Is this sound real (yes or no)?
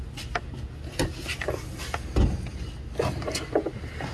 yes